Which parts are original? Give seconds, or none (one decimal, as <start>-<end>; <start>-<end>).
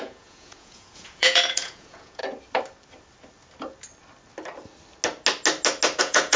2.2-6.0